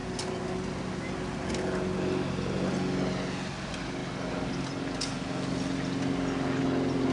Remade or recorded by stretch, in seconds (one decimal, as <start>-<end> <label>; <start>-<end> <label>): 0.0-7.1 recorded